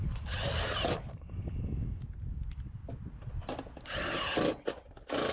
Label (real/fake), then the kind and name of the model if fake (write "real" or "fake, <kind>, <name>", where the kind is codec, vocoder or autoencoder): real